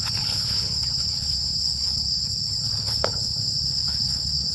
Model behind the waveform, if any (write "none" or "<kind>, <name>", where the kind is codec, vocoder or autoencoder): codec, HILCodec